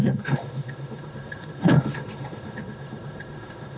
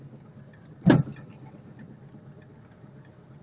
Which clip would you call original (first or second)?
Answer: second